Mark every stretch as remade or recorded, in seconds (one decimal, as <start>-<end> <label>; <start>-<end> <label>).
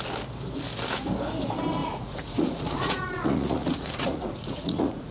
0.0-1.8 recorded; 1.8-5.1 remade